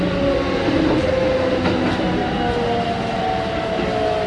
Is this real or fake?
real